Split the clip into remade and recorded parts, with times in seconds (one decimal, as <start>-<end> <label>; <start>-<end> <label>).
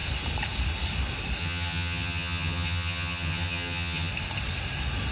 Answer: 0.0-1.4 recorded; 1.4-4.1 remade; 4.1-5.1 recorded